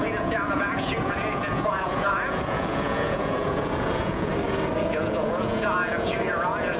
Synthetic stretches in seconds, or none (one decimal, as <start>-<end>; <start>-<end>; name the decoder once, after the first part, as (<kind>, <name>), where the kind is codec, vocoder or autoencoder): 0.0-4.3 (vocoder, Vocos); 4.8-6.8